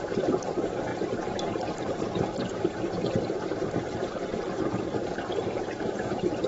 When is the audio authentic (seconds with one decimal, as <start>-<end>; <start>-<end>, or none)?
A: none